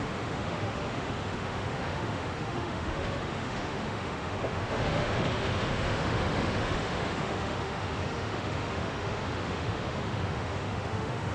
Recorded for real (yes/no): no